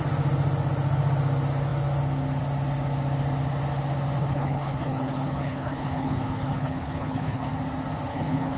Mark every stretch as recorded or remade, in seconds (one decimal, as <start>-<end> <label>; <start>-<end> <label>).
0.0-4.2 recorded; 4.2-7.5 remade; 7.5-8.1 recorded; 8.1-8.6 remade